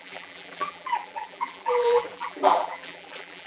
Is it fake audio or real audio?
fake